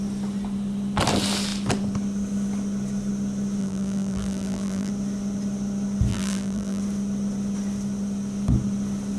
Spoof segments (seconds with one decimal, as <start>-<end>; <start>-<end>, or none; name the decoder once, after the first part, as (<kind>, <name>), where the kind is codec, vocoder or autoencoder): 3.6-4.9 (vocoder, BigVGAN v2); 6.1-6.8